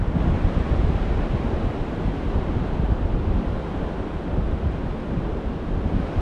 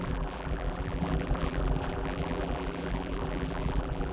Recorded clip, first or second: first